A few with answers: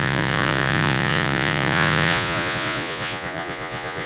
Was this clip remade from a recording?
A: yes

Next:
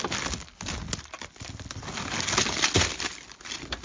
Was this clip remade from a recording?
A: no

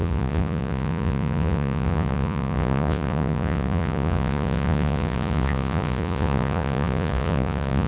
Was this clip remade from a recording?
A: yes